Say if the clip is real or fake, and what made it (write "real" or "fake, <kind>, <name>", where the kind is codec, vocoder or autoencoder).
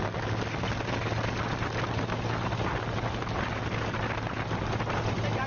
real